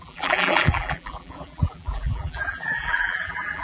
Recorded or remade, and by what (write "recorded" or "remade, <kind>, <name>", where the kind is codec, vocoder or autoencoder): remade, vocoder, BigVGAN v2